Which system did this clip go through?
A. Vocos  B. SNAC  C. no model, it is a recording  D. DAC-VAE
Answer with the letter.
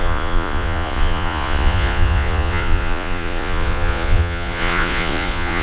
A